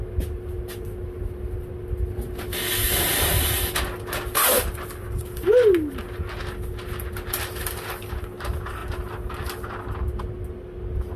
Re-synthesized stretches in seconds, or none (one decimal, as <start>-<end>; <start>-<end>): none